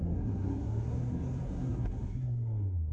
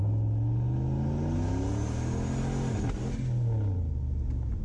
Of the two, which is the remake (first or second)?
first